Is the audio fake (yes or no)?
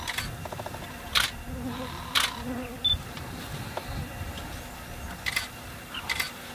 no